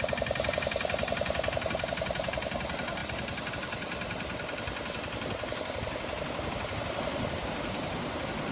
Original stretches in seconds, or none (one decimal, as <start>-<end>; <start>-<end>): 0.0-8.5